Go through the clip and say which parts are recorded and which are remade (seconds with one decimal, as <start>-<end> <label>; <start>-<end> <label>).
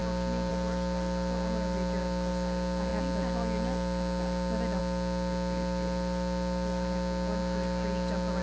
0.0-8.4 recorded